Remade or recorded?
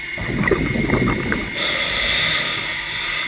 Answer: recorded